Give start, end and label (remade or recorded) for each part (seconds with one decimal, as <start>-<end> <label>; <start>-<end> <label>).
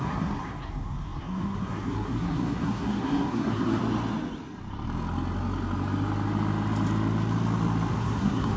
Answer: 0.0-3.8 remade; 3.8-7.9 recorded; 7.9-8.6 remade